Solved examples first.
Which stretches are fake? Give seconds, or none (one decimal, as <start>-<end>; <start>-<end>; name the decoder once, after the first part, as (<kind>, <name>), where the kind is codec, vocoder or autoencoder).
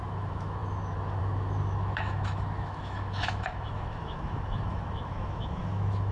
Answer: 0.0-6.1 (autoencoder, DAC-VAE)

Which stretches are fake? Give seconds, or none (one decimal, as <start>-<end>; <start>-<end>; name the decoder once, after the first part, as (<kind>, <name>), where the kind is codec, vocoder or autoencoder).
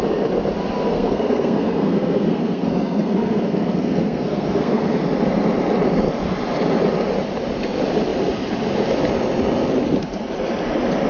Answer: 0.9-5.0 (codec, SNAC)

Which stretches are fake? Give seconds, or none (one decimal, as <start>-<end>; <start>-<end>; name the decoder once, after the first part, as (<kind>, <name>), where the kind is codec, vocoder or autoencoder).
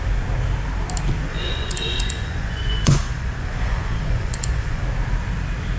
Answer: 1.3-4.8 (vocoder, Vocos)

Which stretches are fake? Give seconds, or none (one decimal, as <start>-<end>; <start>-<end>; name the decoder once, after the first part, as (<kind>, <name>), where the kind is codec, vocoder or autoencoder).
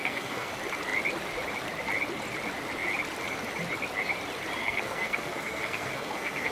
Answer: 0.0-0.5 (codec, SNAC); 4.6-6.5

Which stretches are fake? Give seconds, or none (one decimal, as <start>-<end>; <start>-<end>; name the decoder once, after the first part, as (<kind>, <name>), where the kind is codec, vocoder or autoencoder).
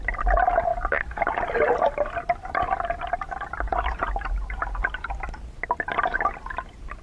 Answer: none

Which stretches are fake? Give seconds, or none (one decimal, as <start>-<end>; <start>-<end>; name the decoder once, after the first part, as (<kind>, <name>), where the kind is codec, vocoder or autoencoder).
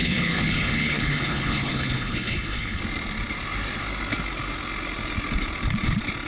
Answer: 0.0-2.8 (codec, HILCodec)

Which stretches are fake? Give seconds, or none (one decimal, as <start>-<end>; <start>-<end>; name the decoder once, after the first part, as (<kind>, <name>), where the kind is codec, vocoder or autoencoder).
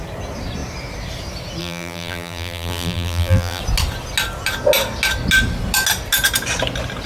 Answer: 1.6-3.6 (vocoder, BigVGAN v2)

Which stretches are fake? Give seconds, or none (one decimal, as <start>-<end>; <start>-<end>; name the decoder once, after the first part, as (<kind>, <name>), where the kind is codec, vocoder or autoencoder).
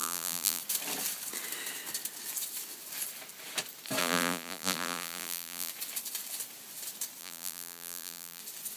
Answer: 0.0-0.6 (vocoder, BigVGAN v2); 4.0-5.7; 7.2-8.4